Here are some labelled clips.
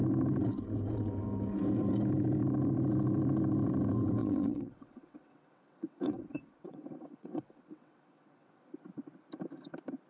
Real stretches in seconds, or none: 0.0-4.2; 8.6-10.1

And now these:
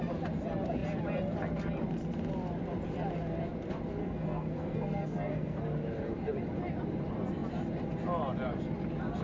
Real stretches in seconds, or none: 0.0-4.0; 5.6-9.2

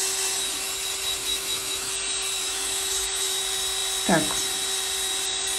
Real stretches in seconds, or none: 0.0-1.2; 1.9-2.4; 3.4-5.6

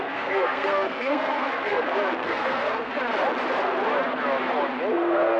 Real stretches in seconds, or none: 2.9-4.9

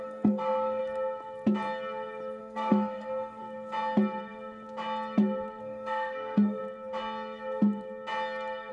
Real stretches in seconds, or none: 0.8-2.4; 3.4-5.6; 6.6-8.7